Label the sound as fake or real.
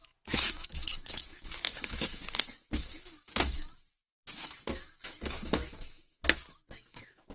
fake